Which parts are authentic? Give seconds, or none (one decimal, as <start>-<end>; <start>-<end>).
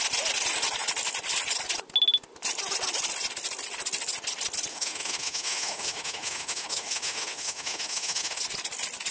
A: 0.0-4.7; 8.4-9.1